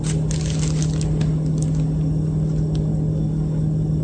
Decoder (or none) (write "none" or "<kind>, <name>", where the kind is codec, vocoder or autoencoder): none